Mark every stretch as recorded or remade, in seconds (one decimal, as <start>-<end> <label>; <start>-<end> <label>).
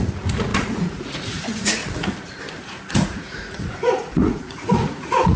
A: 0.0-1.8 remade; 1.8-2.6 recorded; 2.6-5.4 remade